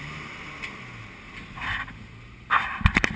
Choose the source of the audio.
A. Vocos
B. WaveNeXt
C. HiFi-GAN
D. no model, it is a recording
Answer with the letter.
D